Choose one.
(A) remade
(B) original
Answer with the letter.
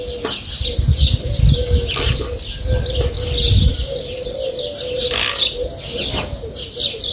B